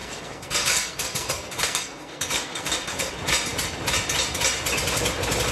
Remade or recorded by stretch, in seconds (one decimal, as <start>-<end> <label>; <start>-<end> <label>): 0.0-3.1 remade; 3.1-5.5 recorded